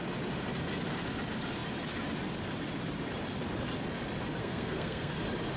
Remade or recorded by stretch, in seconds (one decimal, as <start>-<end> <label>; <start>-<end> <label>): 0.0-4.4 recorded; 4.4-5.1 remade; 5.1-5.6 recorded